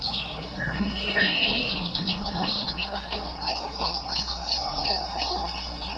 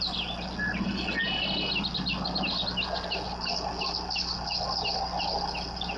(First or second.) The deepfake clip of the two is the first